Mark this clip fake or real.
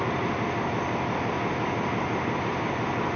real